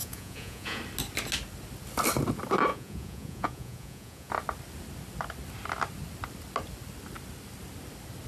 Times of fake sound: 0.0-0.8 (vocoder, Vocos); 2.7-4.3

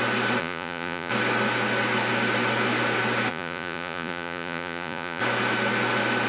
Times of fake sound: 0.4-1.1 (vocoder, Vocos); 3.3-5.2

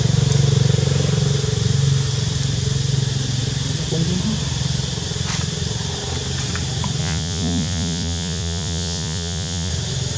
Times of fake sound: 7.0-9.7 (vocoder, Vocos)

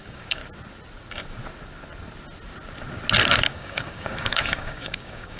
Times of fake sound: 0.0-0.4 (codec, DAC); 3.5-5.4

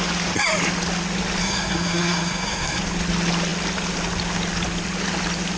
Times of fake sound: 1.4-2.8 (codec, SNAC)